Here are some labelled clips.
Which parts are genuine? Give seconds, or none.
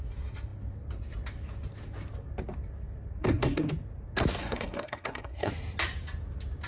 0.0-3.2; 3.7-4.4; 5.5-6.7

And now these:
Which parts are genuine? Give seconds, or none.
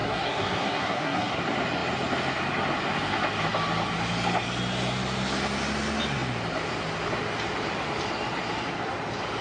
1.4-9.4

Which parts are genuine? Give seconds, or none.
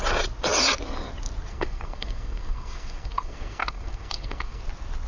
0.0-1.5; 4.6-5.1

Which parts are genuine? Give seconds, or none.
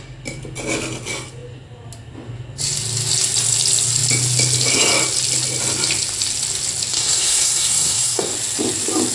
0.0-6.9; 8.3-9.1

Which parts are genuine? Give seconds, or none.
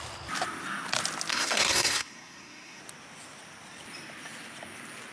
0.0-1.3; 2.8-5.1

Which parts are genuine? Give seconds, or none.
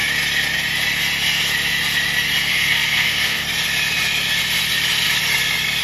0.0-2.5; 3.4-5.8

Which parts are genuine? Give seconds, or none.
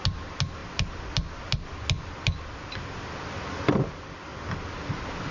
0.0-5.3